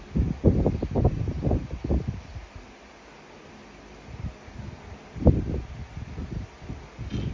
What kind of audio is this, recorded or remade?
recorded